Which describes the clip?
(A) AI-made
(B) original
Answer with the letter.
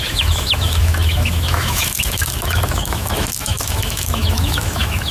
A